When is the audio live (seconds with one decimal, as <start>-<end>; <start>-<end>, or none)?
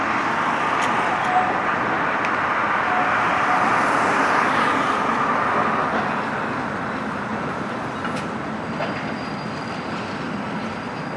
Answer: 0.0-11.2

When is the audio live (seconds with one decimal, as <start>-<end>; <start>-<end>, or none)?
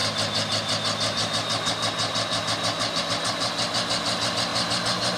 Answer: 0.0-5.2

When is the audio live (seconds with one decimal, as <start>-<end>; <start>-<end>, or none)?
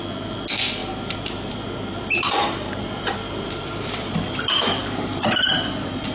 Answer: 0.0-0.8; 4.1-4.8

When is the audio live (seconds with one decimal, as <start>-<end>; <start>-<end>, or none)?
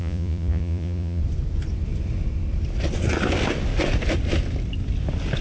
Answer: 1.2-5.4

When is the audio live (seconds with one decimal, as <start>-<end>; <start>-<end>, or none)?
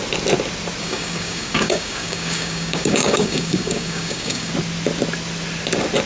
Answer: 0.0-0.8; 4.5-6.1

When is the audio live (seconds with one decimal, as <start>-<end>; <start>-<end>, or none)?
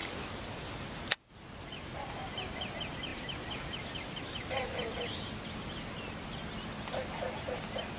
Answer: 0.0-8.0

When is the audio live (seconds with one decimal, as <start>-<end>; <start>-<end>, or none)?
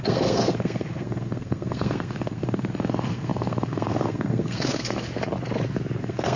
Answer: 5.1-6.0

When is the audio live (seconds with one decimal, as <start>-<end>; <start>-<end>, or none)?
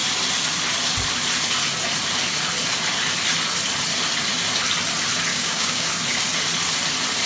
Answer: 0.0-5.3; 5.9-7.3